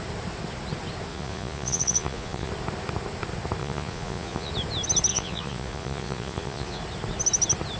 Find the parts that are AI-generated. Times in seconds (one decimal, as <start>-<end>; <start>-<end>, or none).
1.1-2.5; 3.6-4.5; 5.1-6.8